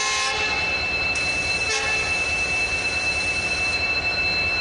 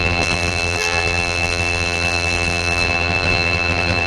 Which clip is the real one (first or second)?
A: first